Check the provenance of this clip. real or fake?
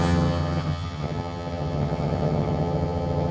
fake